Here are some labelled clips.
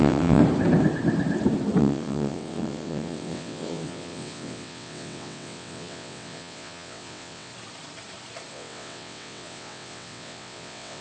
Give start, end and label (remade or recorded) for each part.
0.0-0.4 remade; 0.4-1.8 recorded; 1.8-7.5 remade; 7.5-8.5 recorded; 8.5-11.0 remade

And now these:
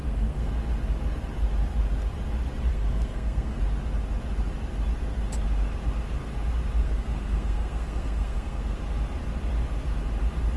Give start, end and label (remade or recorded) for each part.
0.0-0.5 remade; 0.5-2.7 recorded; 2.7-3.6 remade; 3.6-6.8 recorded; 6.8-8.8 remade; 8.8-10.6 recorded

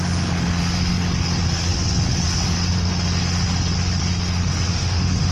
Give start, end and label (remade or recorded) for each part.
0.0-4.7 recorded; 4.7-5.3 remade

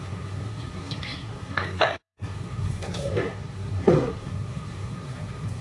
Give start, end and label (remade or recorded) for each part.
0.0-5.6 remade

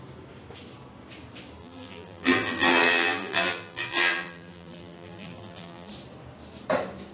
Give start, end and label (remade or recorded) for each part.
0.0-1.6 recorded; 1.6-5.9 remade; 5.9-7.1 recorded

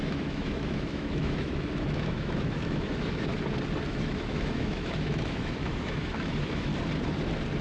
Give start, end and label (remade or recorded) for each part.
0.0-3.3 remade; 3.3-3.9 recorded; 3.9-6.7 remade; 6.7-7.6 recorded